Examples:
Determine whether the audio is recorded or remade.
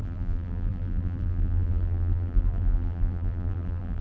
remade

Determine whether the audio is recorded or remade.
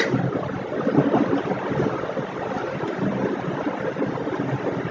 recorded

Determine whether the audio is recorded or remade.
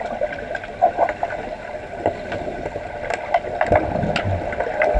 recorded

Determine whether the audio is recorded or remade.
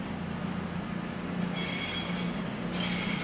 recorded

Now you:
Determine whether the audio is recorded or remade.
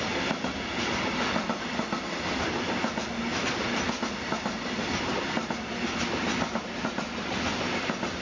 recorded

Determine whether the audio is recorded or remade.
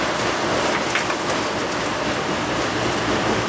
recorded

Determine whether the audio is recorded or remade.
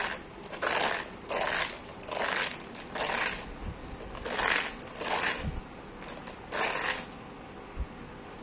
recorded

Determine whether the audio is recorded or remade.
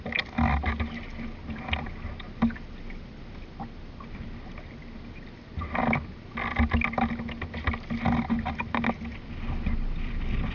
recorded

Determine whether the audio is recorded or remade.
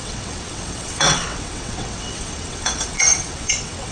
remade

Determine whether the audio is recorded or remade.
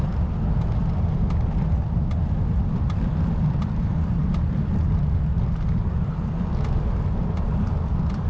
recorded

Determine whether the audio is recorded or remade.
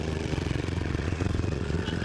remade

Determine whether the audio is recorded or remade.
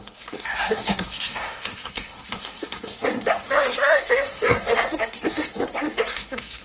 remade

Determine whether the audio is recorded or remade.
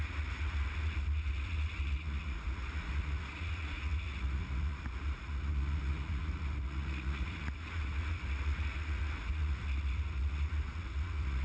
remade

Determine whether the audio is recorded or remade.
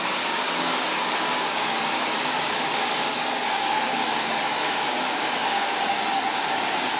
remade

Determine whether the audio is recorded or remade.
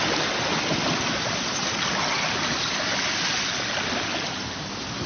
recorded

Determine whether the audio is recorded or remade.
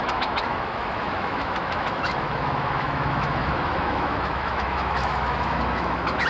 remade